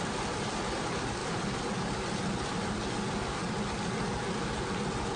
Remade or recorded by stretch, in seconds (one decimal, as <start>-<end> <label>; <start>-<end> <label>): 0.0-1.2 recorded; 1.2-1.7 remade; 1.7-5.2 recorded